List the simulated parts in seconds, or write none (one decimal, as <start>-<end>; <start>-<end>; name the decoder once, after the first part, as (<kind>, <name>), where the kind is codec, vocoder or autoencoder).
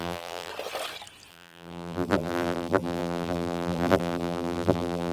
0.0-0.5 (vocoder, BigVGAN v2); 1.3-5.1